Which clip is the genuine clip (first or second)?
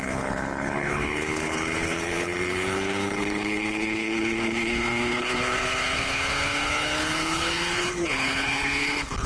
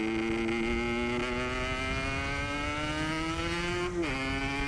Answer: second